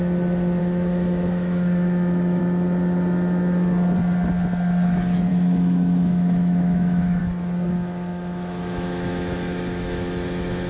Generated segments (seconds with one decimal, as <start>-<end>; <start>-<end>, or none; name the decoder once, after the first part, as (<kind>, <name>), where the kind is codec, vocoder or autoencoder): 0.6-2.4 (autoencoder, DAC-VAE); 5.3-7.2; 8.1-10.7